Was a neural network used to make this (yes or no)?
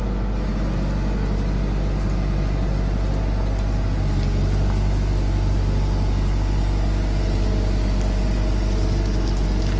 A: no